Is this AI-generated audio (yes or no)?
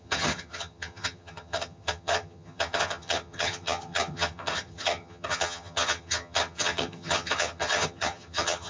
yes